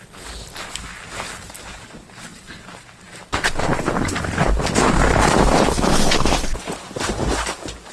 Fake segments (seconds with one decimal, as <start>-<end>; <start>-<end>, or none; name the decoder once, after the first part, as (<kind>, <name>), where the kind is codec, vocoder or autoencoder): none